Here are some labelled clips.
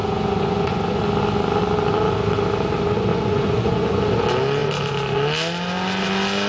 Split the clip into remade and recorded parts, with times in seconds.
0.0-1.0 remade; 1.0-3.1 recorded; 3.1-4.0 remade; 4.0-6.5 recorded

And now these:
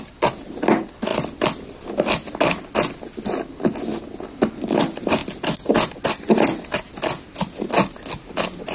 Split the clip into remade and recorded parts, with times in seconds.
0.0-8.7 recorded

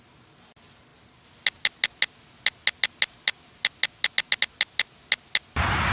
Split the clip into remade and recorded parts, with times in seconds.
0.0-5.9 recorded

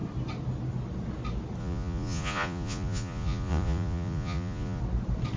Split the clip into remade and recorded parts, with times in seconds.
0.0-1.6 recorded; 1.6-4.8 remade; 4.8-5.4 recorded

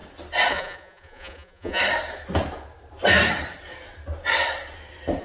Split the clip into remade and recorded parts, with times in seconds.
0.0-0.5 recorded; 0.5-1.8 remade; 1.8-5.2 recorded

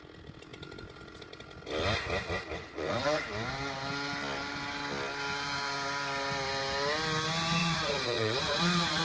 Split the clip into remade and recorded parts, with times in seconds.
0.0-2.6 recorded; 2.6-3.2 remade; 3.2-7.6 recorded; 7.6-9.0 remade

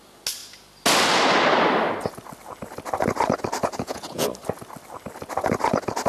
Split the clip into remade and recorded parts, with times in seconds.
0.0-3.6 recorded; 3.6-4.3 remade; 4.3-6.1 recorded